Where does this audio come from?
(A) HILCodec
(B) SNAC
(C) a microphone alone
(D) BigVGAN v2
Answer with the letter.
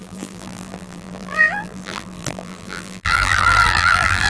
D